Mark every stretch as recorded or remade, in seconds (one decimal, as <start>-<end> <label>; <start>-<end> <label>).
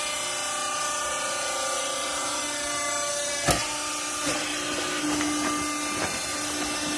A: 0.0-7.0 recorded